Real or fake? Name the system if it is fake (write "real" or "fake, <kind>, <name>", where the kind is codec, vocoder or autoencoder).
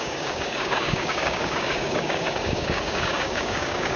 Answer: fake, codec, DAC